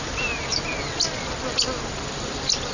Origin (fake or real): real